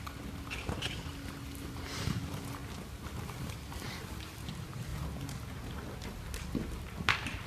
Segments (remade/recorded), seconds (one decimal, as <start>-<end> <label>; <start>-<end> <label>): 0.0-1.1 remade; 1.1-1.8 recorded; 1.8-2.6 remade; 2.6-3.3 recorded; 3.3-4.9 remade; 4.9-7.1 recorded; 7.1-7.5 remade